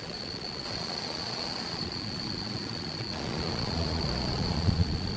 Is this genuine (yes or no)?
no